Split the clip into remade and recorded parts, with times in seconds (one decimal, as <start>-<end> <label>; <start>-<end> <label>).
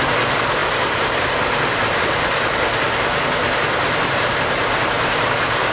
0.0-5.7 recorded